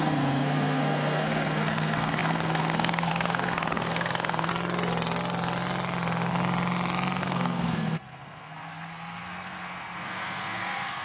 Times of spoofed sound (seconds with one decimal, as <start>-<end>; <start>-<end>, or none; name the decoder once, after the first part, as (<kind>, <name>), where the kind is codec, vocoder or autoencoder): 0.0-4.5 (codec, SNAC); 7.2-11.0